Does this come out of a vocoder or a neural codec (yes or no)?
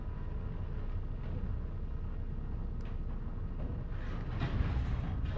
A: no